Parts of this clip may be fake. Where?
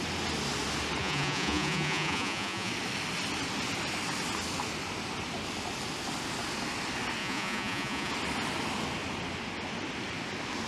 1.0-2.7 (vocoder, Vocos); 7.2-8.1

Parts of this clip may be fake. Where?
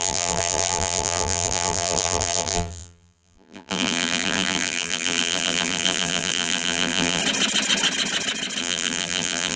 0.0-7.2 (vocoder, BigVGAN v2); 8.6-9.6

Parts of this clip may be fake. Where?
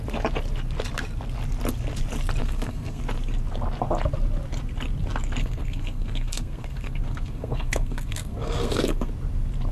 2.4-3.0 (codec, SNAC); 5.4-9.1